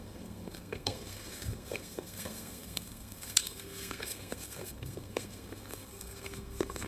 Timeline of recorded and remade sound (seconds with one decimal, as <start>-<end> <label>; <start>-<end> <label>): 0.0-6.9 remade